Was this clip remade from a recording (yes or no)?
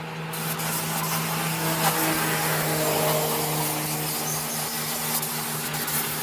no